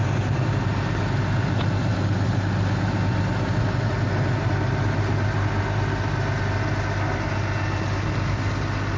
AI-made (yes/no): no